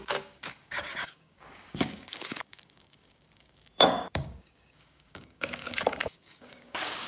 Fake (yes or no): yes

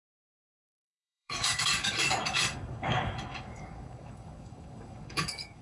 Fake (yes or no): yes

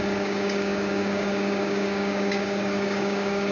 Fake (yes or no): yes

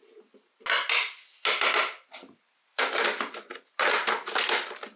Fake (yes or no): no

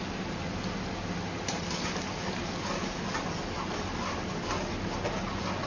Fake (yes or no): no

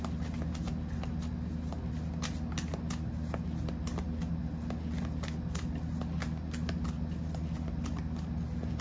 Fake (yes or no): no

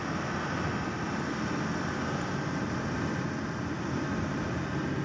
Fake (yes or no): no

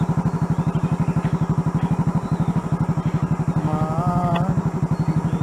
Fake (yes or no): no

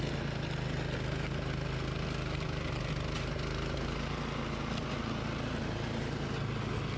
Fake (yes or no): no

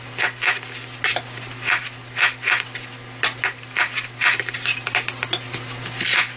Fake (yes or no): no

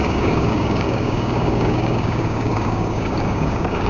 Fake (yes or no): yes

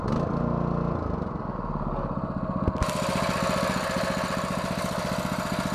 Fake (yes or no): no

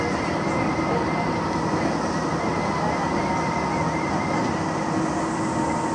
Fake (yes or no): no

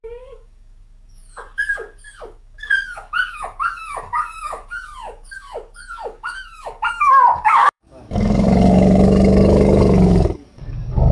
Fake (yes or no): yes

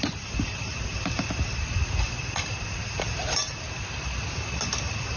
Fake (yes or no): no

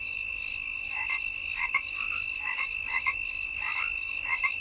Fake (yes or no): yes